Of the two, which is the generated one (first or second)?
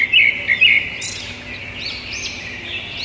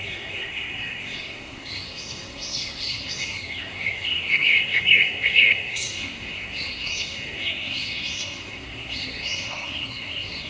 second